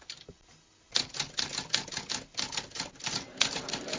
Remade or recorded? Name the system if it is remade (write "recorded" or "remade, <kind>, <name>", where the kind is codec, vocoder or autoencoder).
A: recorded